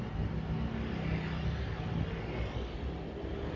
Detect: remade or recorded recorded